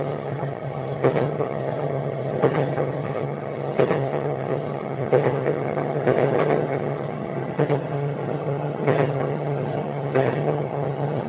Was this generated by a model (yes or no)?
yes